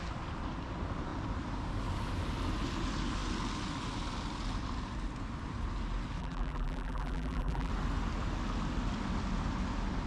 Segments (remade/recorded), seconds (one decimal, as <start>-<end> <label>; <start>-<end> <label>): 0.0-6.2 recorded; 6.2-7.7 remade; 7.7-10.1 recorded

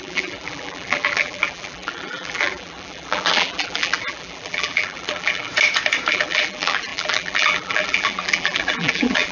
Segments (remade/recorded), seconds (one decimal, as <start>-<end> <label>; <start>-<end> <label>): 0.0-5.5 remade; 5.5-6.1 recorded; 6.1-9.3 remade

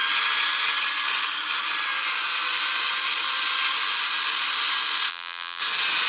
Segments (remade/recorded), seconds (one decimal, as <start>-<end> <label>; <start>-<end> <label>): 0.0-5.1 recorded; 5.1-5.6 remade; 5.6-6.1 recorded

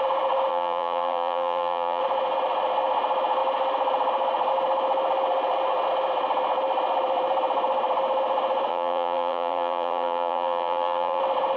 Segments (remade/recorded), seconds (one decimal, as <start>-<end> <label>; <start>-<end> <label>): 0.0-0.5 recorded; 0.5-2.0 remade; 2.0-8.7 recorded; 8.7-11.2 remade; 11.2-11.6 recorded